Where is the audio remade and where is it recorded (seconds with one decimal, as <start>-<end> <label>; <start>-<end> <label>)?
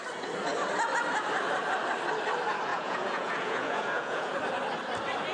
0.0-2.7 recorded; 2.7-4.3 remade; 4.3-5.3 recorded